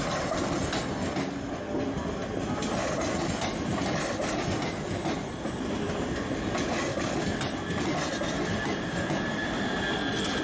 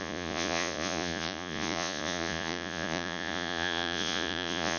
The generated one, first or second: second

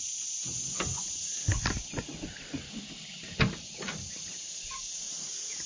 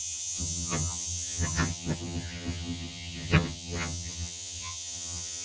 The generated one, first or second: second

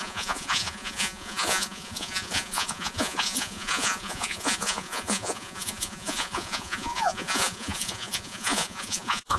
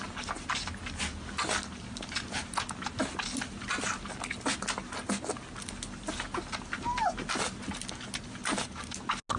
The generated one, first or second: first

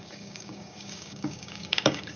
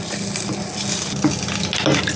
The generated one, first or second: first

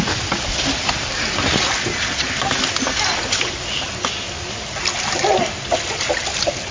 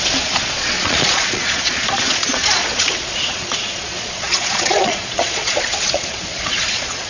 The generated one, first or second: second